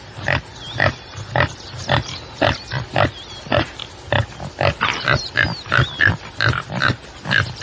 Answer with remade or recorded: recorded